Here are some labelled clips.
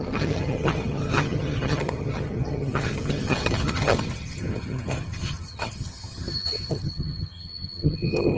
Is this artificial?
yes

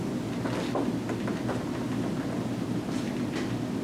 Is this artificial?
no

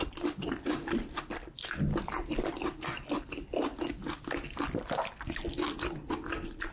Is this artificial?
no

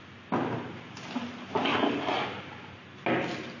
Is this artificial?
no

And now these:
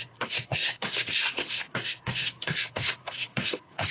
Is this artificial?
yes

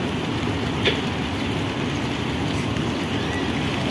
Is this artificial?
no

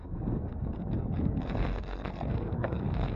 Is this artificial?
yes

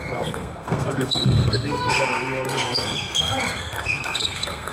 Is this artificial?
yes